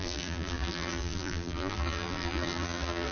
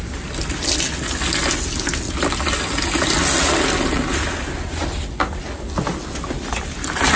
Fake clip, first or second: first